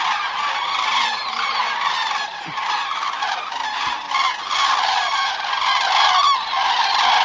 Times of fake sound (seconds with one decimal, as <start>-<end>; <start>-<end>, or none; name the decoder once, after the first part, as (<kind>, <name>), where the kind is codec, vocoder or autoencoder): none

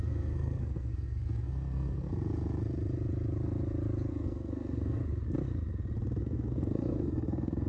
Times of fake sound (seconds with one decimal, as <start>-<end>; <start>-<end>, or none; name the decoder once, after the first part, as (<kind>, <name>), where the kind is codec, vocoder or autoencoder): 0.0-2.1 (codec, SNAC); 4.1-5.0; 6.2-7.7

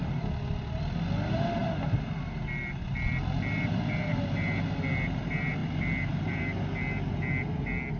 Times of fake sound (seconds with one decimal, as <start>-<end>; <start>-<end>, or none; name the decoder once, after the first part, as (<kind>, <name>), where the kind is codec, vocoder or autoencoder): none

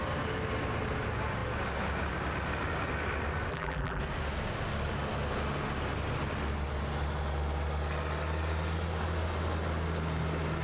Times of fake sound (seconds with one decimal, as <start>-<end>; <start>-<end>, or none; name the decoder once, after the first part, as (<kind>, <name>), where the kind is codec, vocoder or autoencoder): 3.5-4.0 (vocoder, BigVGAN v2)

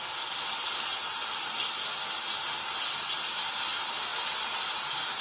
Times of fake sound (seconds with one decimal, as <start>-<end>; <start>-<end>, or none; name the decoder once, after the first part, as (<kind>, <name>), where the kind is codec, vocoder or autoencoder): none

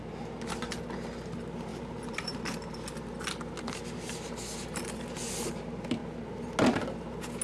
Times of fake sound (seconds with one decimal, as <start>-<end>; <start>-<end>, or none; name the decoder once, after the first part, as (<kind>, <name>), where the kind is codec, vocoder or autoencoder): 1.7-2.4 (vocoder, BigVGAN v2)